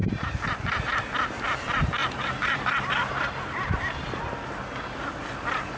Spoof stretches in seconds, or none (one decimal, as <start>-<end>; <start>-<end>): 2.0-4.2